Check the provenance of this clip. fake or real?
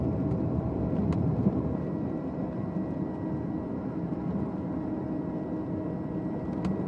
real